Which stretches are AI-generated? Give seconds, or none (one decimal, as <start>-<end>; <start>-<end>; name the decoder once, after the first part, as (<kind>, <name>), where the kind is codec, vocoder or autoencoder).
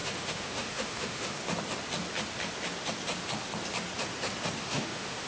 0.0-1.4 (autoencoder, DAC-VAE); 4.6-5.3